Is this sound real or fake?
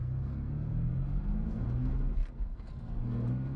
fake